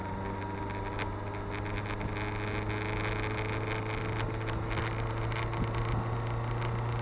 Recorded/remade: recorded